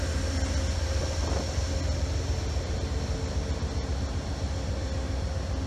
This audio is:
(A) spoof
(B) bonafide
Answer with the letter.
B